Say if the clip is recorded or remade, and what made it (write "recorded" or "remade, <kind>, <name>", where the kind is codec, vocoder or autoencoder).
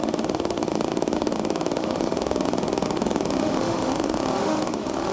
remade, autoencoder, DAC-VAE